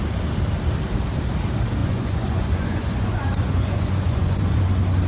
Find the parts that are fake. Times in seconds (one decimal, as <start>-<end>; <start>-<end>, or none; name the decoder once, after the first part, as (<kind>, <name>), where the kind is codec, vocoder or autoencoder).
1.8-4.6 (vocoder, Vocos)